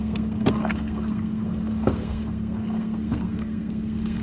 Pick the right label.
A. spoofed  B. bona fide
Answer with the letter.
A